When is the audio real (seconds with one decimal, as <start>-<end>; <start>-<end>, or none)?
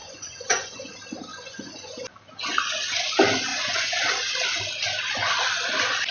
0.9-1.3; 1.9-3.5; 4.2-6.1